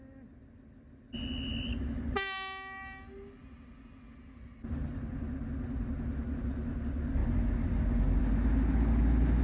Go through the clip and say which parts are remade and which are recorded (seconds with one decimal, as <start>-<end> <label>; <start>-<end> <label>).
0.0-9.4 recorded